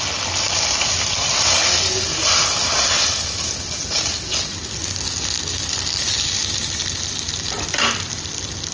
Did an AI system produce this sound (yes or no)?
no